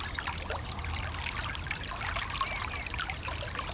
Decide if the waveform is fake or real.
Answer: real